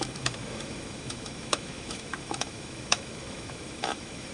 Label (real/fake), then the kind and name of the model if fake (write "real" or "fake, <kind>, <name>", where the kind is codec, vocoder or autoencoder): fake, autoencoder, DAC-VAE